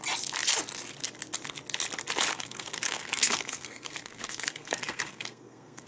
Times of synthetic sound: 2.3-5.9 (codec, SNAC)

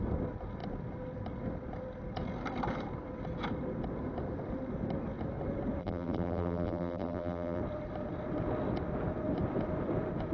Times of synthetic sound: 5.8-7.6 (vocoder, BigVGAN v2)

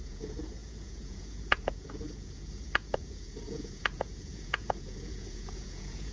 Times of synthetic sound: 0.0-6.1 (vocoder, Vocos)

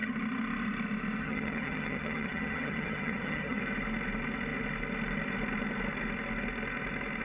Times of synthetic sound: 1.2-3.6 (vocoder, HiFi-GAN)

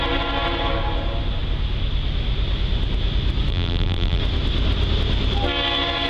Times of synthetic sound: 3.5-4.2 (vocoder, BigVGAN v2)

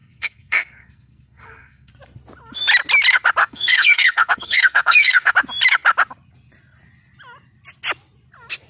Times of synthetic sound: 0.0-1.9 (codec, SNAC); 3.4-5.3

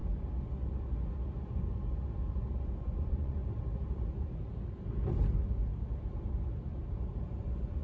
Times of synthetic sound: 2.8-3.4 (vocoder, Vocos)